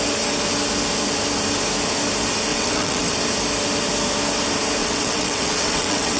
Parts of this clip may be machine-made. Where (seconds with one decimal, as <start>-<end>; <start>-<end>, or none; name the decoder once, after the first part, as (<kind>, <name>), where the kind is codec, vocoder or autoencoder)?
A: 2.5-3.1 (vocoder, WaveNeXt); 4.8-6.2